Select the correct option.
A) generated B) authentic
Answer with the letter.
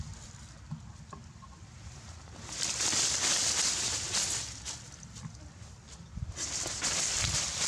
B